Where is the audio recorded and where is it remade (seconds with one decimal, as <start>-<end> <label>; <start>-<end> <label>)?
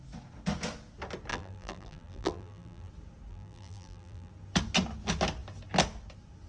0.0-1.3 recorded; 1.3-2.9 remade; 2.9-3.3 recorded; 3.3-4.3 remade; 4.3-6.5 recorded